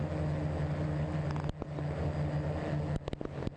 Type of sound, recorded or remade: recorded